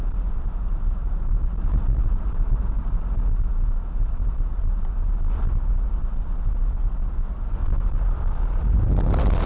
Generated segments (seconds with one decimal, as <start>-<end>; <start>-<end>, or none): 1.0-2.9; 7.6-8.9